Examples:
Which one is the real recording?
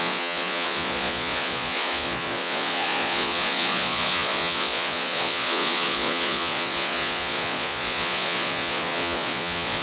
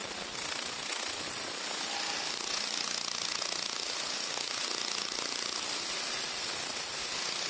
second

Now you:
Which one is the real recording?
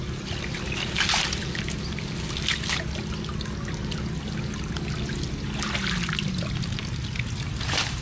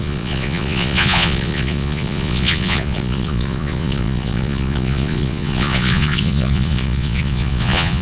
first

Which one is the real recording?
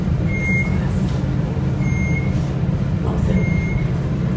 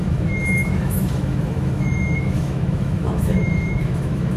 first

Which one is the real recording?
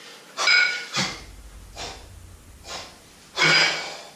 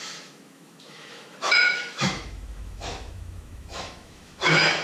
first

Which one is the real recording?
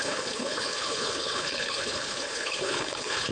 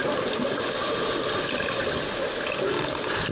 second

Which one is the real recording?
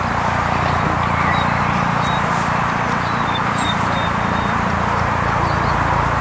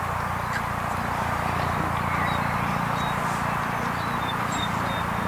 second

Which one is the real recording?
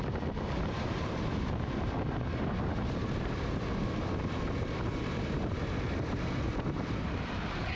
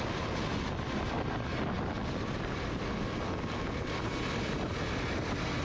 second